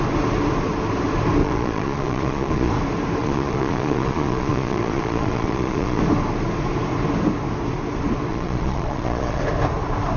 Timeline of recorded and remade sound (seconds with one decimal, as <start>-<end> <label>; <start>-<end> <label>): 0.0-1.4 recorded; 1.4-2.7 remade; 2.7-3.2 recorded; 3.2-6.0 remade; 6.0-8.3 recorded; 8.3-9.4 remade; 9.4-10.2 recorded